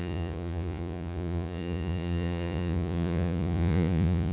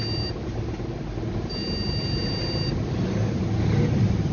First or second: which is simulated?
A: first